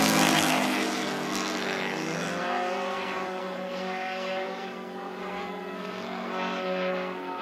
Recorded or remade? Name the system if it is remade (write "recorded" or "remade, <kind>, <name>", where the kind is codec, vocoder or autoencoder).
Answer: remade, codec, SNAC